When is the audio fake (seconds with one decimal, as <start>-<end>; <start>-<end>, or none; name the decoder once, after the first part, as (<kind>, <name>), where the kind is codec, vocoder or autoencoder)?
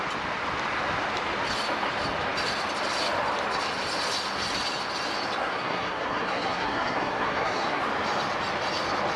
5.4-7.8 (codec, SNAC)